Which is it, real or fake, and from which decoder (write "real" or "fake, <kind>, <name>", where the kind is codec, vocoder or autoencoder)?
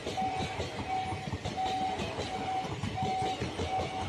real